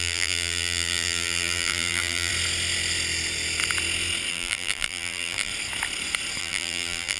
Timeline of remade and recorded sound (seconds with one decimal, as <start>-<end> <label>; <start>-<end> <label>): 0.0-2.3 remade; 2.3-4.3 recorded; 4.3-5.5 remade; 5.5-6.4 recorded; 6.4-7.2 remade